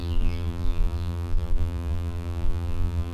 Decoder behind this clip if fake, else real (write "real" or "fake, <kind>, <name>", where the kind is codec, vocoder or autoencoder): fake, vocoder, BigVGAN v2